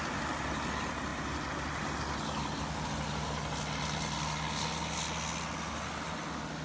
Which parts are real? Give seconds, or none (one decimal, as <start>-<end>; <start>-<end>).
0.0-6.6